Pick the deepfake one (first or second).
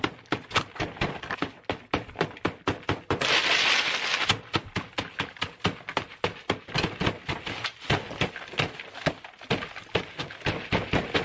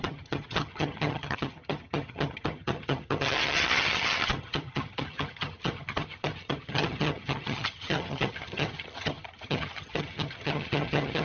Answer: second